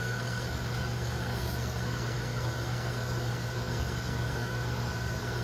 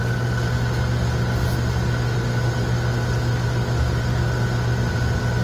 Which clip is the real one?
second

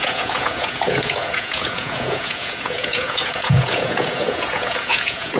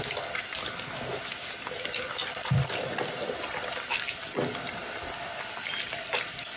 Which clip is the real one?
second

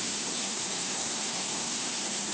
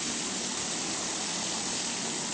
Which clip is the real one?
second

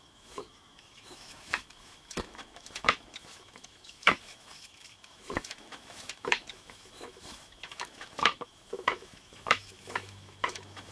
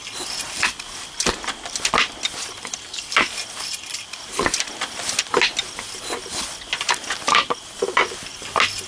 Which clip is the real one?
second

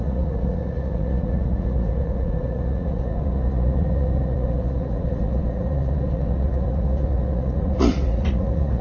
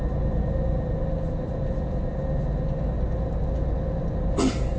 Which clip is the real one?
second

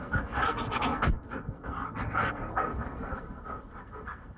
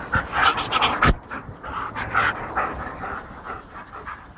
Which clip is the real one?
second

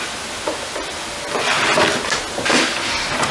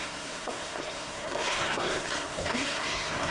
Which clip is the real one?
first